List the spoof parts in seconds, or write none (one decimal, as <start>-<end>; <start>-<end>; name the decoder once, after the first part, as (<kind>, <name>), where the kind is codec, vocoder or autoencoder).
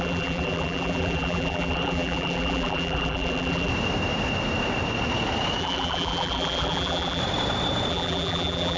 0.0-3.7 (vocoder, BigVGAN v2); 5.6-7.2; 7.9-8.8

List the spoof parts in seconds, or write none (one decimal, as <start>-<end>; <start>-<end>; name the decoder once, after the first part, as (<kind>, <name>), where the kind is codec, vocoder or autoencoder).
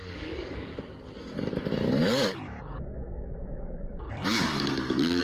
0.0-0.7 (codec, DAC); 1.2-5.2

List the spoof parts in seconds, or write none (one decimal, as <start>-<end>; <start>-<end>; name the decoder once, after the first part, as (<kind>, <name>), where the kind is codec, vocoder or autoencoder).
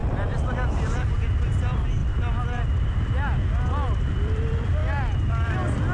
0.0-2.0 (vocoder, BigVGAN v2); 4.1-4.8; 5.3-5.9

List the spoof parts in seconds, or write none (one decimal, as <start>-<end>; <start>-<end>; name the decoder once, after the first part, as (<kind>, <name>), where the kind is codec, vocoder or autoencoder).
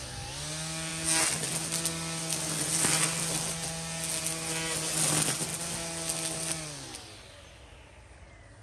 none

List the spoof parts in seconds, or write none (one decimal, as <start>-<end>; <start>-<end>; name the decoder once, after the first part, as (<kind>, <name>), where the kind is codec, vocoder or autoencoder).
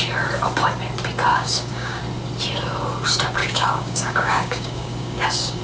1.3-2.0 (codec, DAC); 3.4-5.6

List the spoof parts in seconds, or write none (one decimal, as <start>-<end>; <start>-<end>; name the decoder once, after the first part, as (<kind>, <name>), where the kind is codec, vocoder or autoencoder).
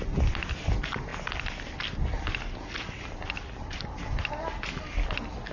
none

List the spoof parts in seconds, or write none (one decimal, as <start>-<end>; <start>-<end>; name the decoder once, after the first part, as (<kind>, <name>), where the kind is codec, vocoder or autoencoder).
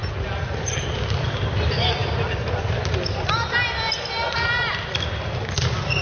2.0-2.8 (vocoder, BigVGAN v2)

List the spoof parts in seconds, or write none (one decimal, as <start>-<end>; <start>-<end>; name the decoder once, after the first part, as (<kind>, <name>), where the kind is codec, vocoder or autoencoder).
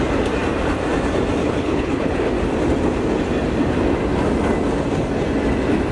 1.4-2.3 (codec, HILCodec)